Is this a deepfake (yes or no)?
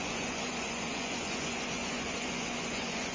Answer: yes